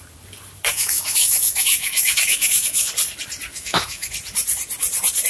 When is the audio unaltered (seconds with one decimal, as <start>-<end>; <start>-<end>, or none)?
0.0-0.7; 2.9-3.5; 4.1-5.3